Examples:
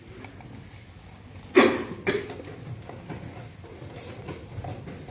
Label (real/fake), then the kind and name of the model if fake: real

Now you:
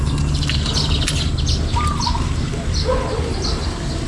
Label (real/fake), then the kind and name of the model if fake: real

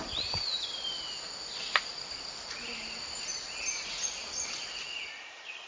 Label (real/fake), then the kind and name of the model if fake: real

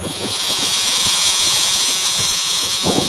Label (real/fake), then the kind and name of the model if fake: fake, vocoder, Vocos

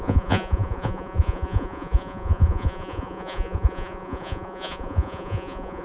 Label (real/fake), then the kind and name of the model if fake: fake, vocoder, Vocos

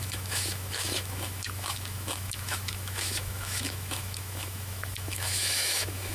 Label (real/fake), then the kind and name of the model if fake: fake, autoencoder, DAC-VAE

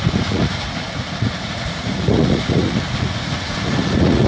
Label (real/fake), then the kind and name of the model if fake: fake, vocoder, Vocos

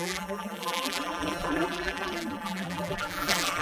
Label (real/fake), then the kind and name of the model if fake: fake, vocoder, BigVGAN v2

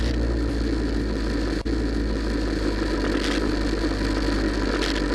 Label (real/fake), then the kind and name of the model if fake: real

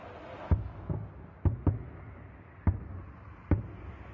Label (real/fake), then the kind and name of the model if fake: real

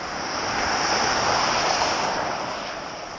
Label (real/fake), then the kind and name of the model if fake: real